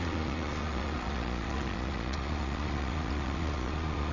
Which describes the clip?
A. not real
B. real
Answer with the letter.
A